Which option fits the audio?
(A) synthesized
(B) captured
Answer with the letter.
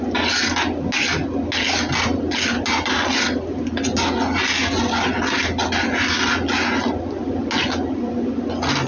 B